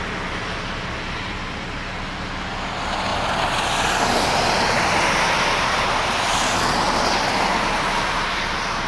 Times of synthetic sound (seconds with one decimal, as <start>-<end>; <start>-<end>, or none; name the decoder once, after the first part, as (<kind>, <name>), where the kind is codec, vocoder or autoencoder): none

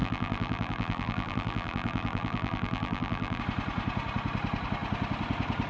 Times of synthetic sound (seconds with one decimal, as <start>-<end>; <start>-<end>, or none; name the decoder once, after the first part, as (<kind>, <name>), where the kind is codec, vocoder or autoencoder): 0.0-3.4 (vocoder, BigVGAN v2)

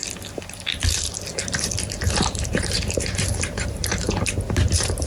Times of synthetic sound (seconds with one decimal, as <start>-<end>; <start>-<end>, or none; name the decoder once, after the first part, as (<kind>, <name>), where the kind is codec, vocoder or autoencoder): 1.9-5.1 (vocoder, BigVGAN v2)

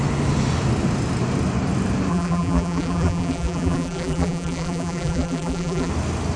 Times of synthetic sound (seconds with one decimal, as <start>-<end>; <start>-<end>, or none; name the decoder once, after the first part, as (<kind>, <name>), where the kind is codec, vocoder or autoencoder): 2.1-5.9 (vocoder, BigVGAN v2)

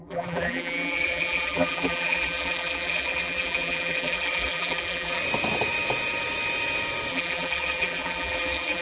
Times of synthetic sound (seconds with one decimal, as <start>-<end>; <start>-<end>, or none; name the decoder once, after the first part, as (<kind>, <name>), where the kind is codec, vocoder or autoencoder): 0.0-5.2 (vocoder, BigVGAN v2); 7.1-8.8

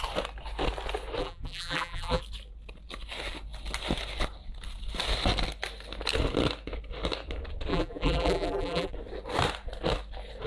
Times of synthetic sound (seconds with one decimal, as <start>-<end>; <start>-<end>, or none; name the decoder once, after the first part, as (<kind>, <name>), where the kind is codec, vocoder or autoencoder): 1.2-2.2 (vocoder, BigVGAN v2); 7.7-8.9

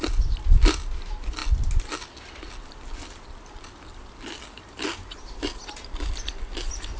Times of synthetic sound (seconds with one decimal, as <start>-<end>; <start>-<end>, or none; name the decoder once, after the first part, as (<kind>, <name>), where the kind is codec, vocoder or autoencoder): 0.0-1.4 (vocoder, BigVGAN v2); 2.2-7.0

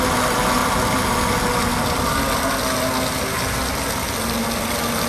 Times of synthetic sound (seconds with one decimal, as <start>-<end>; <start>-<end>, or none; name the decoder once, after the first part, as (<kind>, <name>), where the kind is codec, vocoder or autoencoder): 0.6-1.3 (vocoder, BigVGAN v2)